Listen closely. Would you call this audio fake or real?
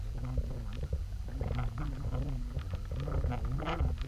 real